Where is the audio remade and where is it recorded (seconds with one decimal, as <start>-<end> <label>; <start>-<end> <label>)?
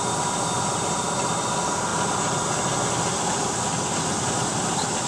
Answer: 0.0-5.1 recorded